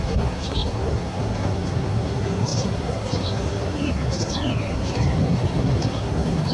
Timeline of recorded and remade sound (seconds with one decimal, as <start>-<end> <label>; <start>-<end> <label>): 0.0-6.5 remade